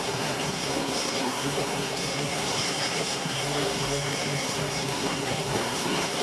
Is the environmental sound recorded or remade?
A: remade